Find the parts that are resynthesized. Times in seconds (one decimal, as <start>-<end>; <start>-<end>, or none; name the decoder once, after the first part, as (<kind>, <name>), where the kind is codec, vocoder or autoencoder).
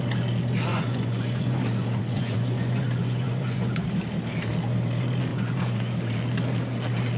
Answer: 0.7-3.7 (vocoder, Vocos); 5.3-5.9